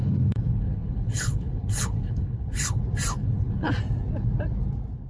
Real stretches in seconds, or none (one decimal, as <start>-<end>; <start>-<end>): 2.8-3.2; 3.7-5.1

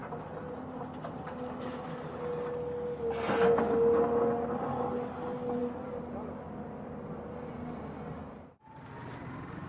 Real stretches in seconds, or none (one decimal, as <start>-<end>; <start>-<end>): 0.0-9.7

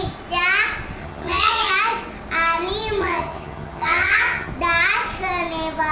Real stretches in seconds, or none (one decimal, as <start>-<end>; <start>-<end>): 0.0-1.0; 1.7-3.0; 4.5-5.9

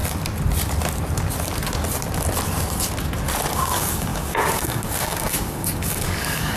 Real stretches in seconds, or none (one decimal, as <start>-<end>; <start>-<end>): 0.0-3.5

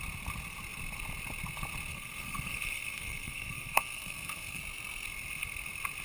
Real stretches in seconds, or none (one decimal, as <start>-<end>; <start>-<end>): 0.0-1.9; 4.6-6.0

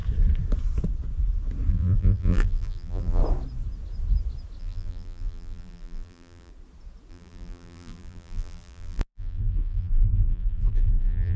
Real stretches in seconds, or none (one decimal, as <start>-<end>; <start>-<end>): 0.0-1.7; 3.2-4.6; 6.5-7.1

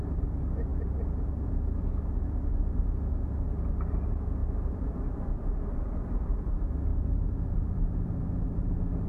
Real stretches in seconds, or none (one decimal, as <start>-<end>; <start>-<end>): 0.0-4.4; 6.5-6.9; 8.7-9.1

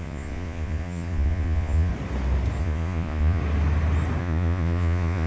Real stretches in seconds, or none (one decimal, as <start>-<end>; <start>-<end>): 1.9-2.6; 3.4-4.2